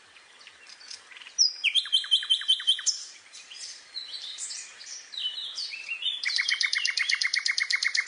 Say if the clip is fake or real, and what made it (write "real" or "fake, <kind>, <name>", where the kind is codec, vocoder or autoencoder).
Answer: fake, vocoder, BigVGAN v2